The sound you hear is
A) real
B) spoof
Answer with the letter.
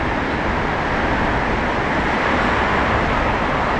A